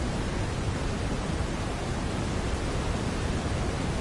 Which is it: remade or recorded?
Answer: remade